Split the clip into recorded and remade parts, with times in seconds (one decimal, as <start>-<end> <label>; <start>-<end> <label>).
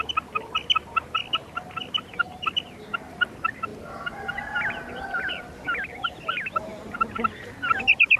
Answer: 0.0-8.2 recorded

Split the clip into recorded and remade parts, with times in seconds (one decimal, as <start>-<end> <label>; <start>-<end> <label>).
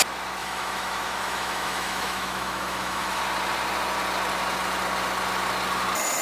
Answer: 0.0-0.4 recorded; 0.4-3.2 remade; 3.2-6.2 recorded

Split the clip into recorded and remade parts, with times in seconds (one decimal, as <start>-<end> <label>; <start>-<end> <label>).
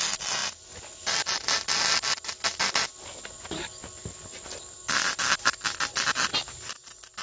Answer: 0.0-7.2 recorded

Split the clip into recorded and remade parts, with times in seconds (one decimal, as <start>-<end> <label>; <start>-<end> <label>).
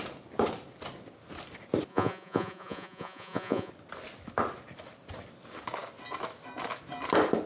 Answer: 0.0-1.9 recorded; 1.9-3.7 remade; 3.7-7.5 recorded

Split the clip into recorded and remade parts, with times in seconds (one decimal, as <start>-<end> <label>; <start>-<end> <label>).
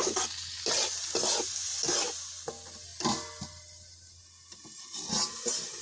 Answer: 0.0-5.8 recorded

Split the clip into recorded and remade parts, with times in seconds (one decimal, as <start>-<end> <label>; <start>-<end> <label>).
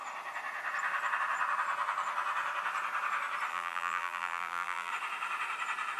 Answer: 0.0-3.5 recorded; 3.5-4.9 remade; 4.9-6.0 recorded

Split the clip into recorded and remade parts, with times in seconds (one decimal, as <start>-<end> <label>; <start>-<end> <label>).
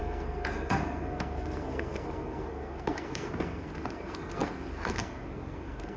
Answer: 0.0-6.0 remade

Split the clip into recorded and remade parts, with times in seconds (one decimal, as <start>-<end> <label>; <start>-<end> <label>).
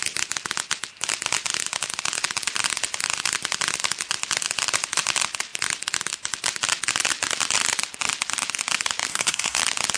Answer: 0.0-9.1 recorded; 9.1-9.6 remade; 9.6-10.0 recorded